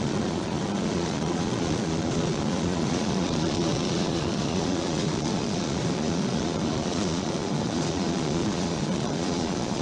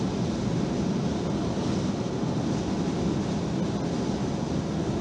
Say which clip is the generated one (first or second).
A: first